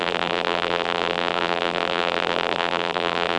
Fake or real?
fake